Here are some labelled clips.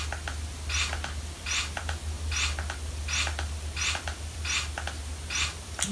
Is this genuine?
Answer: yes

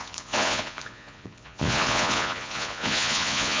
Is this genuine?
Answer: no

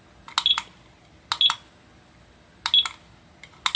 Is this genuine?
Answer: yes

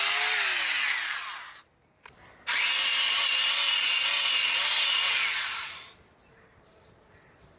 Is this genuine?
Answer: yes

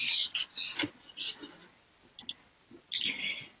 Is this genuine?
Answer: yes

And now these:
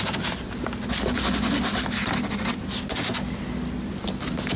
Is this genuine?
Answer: yes